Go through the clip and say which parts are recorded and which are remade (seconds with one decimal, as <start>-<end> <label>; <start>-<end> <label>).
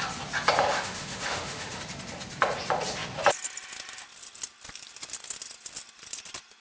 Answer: 0.0-0.7 recorded; 0.7-1.8 remade; 1.8-6.6 recorded